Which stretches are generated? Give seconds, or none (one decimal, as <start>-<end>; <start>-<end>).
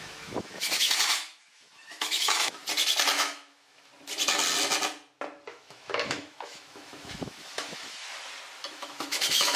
0.0-2.6; 3.1-3.9; 5.5-8.1; 8.7-9.6